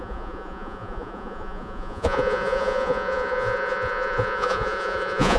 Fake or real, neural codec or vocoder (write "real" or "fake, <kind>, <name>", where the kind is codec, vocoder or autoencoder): fake, vocoder, Vocos